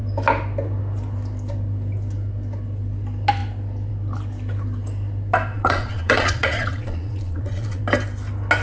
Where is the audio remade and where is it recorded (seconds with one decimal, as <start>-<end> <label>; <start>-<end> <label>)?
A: 0.0-5.5 recorded; 5.5-7.8 remade; 7.8-8.6 recorded